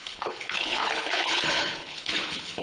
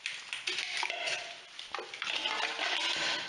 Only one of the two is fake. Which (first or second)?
first